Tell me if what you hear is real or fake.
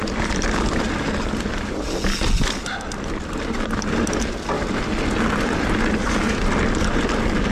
real